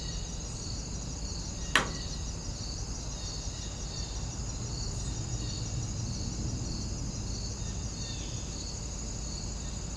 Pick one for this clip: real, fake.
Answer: real